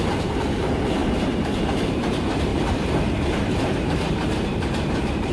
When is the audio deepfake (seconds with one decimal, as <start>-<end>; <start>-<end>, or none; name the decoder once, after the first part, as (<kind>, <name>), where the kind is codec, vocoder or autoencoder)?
0.0-5.3 (vocoder, BigVGAN v2)